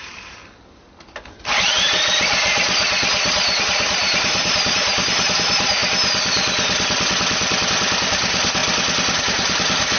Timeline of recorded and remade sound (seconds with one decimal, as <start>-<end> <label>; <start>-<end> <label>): 0.0-0.4 remade; 0.4-3.6 recorded; 3.6-5.8 remade; 5.8-7.7 recorded; 7.7-8.6 remade; 8.6-9.2 recorded; 9.2-10.0 remade